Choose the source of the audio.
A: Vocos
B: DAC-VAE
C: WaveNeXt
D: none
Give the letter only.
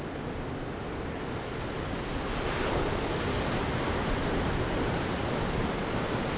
D